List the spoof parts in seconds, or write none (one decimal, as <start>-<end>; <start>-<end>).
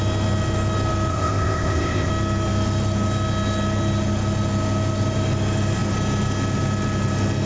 1.1-2.1